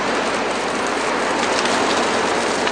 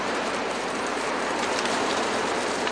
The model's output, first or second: second